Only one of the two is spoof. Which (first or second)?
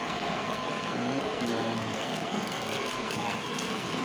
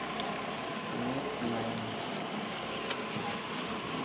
first